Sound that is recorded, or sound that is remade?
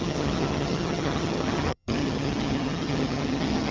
remade